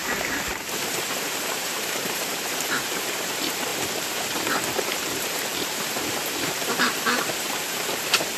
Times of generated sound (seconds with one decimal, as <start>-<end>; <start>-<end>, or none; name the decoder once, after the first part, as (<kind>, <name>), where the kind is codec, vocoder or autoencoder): 0.0-3.7 (vocoder, BigVGAN v2); 4.8-8.4